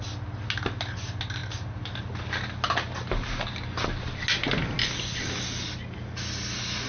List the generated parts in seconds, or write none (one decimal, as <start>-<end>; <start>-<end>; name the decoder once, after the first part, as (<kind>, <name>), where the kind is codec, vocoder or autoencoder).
none